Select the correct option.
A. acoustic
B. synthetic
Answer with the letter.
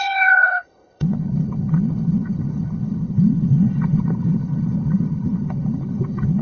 B